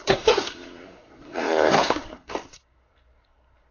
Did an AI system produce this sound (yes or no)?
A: yes